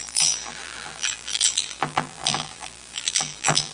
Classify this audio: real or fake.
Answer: fake